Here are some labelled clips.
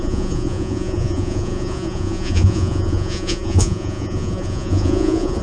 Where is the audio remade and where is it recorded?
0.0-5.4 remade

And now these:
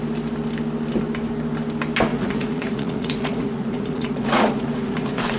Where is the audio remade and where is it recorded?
0.0-2.1 recorded; 2.1-5.4 remade

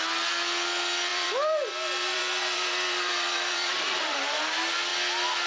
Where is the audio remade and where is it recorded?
0.0-1.1 recorded; 1.1-4.4 remade; 4.4-5.5 recorded

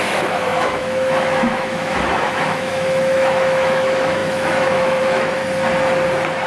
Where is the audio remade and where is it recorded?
0.0-5.4 remade; 5.4-6.5 recorded

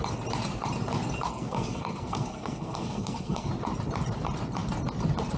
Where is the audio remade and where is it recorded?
0.0-1.3 recorded; 1.3-3.5 remade; 3.5-5.4 recorded

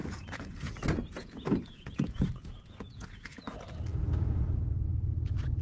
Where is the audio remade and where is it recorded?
0.0-3.4 remade; 3.4-5.6 recorded